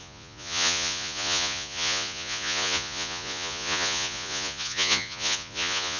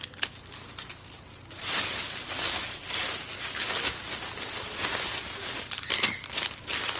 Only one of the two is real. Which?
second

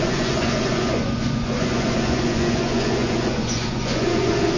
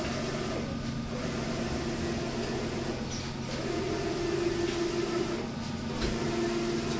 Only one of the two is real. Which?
second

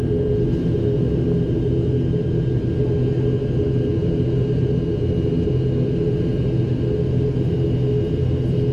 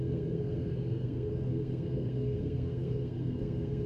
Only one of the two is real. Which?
first